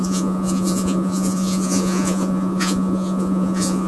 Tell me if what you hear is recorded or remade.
remade